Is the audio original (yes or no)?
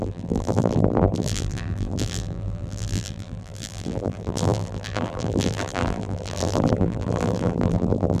no